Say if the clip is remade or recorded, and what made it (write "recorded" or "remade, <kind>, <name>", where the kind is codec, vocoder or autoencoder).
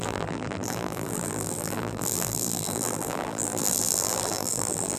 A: remade, vocoder, BigVGAN v2